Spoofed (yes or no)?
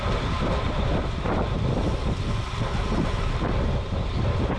no